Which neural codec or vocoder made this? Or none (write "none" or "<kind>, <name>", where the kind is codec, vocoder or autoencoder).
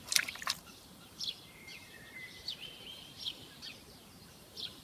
vocoder, BigVGAN v2